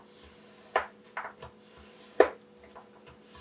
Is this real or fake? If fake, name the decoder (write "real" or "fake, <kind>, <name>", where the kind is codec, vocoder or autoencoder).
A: real